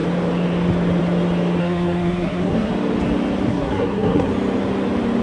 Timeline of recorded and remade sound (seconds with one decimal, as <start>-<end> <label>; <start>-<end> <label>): 0.0-1.6 recorded; 1.6-2.7 remade; 2.7-3.5 recorded; 3.5-4.3 remade; 4.3-5.2 recorded